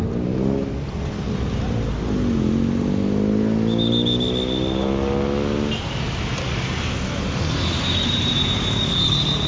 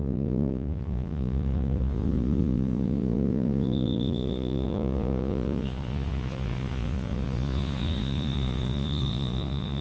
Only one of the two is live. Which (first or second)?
first